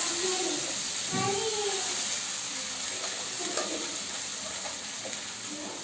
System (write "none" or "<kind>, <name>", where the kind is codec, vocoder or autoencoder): none